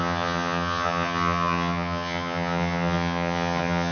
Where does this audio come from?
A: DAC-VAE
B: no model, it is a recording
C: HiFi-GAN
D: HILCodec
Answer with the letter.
C